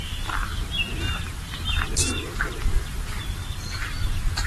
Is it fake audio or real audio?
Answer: real